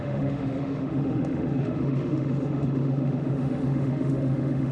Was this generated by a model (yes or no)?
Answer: yes